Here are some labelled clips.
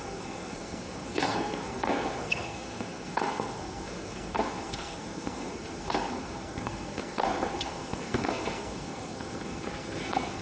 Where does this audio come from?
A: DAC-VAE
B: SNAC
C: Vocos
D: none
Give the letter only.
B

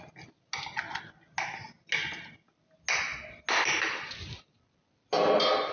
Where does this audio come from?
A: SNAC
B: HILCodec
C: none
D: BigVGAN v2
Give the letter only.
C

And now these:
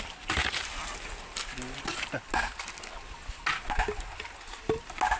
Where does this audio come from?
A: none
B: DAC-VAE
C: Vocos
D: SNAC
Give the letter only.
A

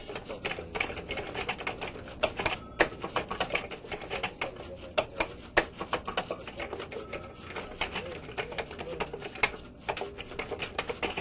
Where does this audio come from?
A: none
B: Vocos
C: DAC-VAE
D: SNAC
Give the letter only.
A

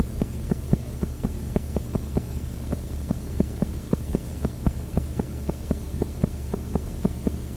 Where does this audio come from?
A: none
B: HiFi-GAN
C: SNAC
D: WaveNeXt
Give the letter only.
C